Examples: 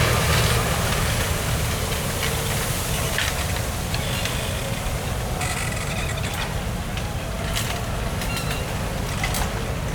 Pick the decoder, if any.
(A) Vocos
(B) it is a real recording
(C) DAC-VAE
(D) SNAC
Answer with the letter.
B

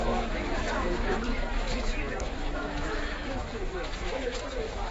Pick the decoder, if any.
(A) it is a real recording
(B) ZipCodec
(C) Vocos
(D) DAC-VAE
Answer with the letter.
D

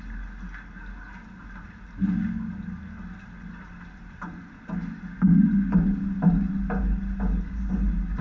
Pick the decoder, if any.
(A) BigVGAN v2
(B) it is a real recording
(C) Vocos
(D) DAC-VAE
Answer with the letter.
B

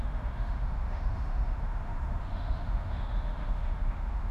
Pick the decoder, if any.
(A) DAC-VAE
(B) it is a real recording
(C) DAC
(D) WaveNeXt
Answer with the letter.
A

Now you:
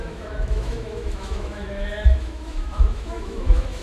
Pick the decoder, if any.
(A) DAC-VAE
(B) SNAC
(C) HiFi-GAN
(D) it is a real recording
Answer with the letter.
A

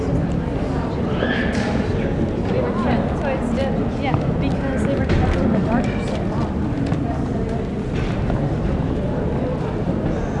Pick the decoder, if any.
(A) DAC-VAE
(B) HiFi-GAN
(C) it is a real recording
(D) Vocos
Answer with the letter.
C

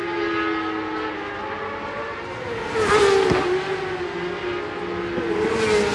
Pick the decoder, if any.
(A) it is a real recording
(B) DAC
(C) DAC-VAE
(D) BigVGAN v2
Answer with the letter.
A